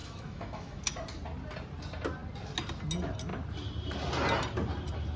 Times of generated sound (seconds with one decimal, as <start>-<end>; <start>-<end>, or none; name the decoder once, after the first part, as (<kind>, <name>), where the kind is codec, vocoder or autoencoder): 0.0-0.8 (autoencoder, DAC-VAE)